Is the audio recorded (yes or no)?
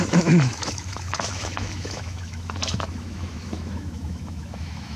no